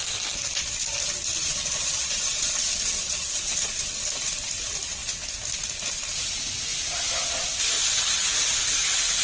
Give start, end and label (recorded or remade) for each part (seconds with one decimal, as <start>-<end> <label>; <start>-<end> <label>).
0.0-1.4 recorded; 1.4-3.8 remade; 3.8-9.2 recorded